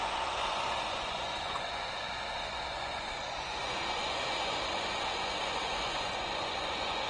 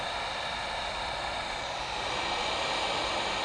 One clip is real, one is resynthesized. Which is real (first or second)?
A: second